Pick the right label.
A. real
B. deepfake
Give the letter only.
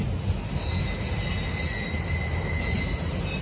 A